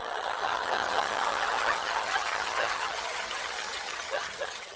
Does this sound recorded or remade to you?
remade